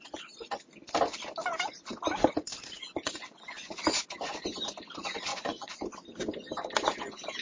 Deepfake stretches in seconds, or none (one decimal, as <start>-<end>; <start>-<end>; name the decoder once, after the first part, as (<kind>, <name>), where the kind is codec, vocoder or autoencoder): 2.8-3.7 (vocoder, Vocos); 5.3-5.8

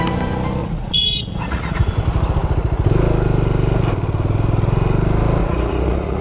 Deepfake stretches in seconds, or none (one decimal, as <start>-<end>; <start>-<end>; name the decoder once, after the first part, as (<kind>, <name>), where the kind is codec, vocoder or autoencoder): 0.6-1.9 (vocoder, Vocos); 5.4-6.2

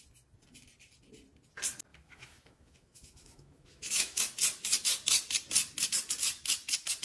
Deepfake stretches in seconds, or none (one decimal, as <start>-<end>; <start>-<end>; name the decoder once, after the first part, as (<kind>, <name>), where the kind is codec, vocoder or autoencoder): 1.9-4.2 (autoencoder, DAC-VAE)

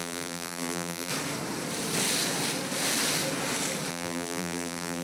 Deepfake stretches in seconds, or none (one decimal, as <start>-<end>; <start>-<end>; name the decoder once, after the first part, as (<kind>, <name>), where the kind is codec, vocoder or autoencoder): 0.0-1.1 (vocoder, BigVGAN v2); 3.9-5.0

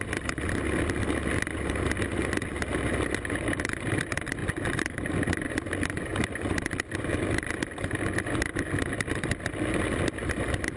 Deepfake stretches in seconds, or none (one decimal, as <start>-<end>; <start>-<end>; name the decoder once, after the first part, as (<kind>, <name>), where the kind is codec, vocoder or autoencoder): 6.1-7.1 (vocoder, BigVGAN v2)

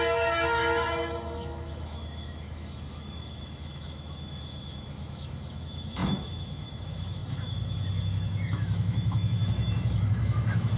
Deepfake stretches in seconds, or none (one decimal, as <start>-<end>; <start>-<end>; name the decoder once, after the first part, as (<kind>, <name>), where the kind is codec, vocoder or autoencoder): 0.0-10.8 (autoencoder, DAC-VAE)

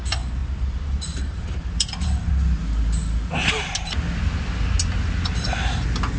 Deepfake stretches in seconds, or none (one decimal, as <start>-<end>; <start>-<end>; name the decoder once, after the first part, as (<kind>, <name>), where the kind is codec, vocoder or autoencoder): 0.4-2.3 (vocoder, BigVGAN v2)

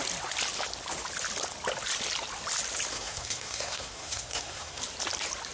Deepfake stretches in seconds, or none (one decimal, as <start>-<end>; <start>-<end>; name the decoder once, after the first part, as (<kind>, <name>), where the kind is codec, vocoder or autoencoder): 2.9-4.8 (codec, SNAC)